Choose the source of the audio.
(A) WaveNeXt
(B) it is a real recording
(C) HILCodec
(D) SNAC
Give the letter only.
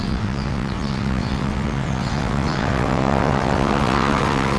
A